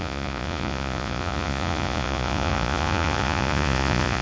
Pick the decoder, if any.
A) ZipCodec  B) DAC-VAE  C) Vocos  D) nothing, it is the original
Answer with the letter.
C